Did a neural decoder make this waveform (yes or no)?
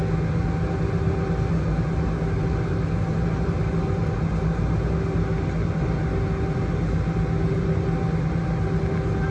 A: no